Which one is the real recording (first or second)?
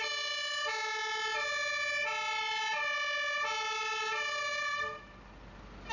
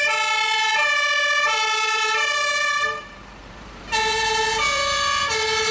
first